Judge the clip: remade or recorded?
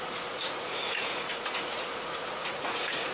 remade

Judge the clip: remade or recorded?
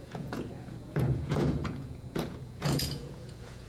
remade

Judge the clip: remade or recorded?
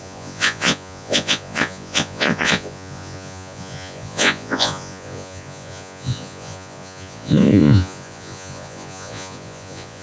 remade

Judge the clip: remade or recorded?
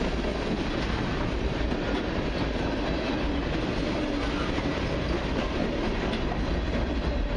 recorded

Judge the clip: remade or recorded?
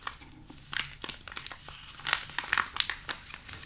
recorded